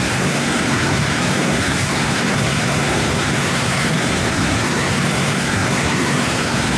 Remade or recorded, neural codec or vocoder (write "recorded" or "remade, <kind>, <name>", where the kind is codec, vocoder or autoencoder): remade, codec, SNAC